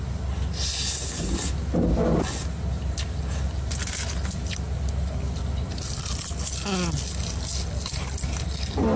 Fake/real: real